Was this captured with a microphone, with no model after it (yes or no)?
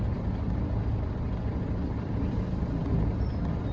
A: no